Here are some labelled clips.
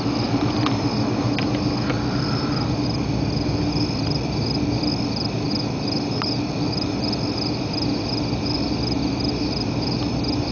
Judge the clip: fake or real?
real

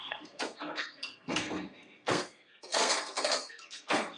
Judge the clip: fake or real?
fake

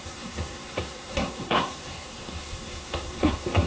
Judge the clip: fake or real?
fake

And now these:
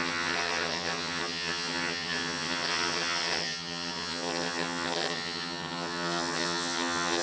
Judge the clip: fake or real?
fake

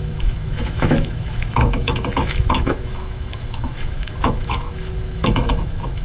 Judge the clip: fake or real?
fake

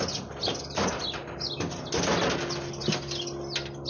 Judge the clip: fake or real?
real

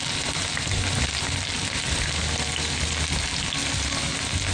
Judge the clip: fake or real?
real